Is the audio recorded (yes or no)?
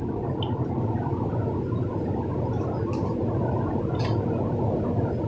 no